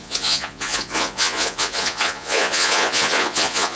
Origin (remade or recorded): remade